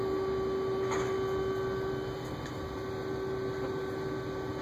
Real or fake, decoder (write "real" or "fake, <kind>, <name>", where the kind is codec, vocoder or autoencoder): real